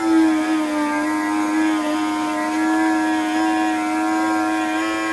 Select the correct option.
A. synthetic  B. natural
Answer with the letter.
B